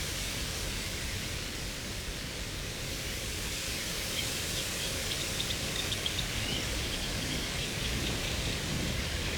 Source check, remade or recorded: remade